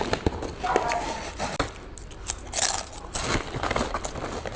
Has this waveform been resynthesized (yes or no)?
no